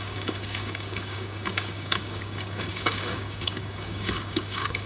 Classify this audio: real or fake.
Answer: fake